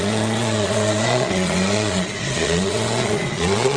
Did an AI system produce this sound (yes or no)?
yes